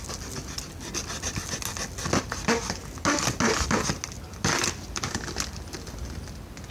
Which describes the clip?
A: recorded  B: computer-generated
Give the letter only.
A